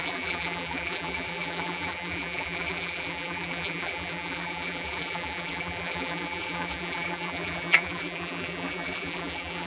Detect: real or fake fake